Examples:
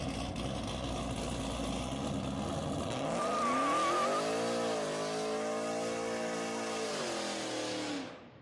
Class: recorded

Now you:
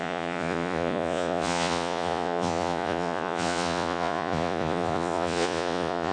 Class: remade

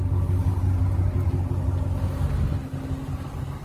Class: recorded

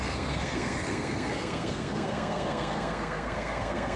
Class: remade